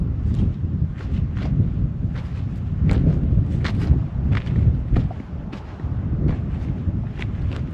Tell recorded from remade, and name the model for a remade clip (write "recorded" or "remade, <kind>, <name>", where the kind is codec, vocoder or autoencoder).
recorded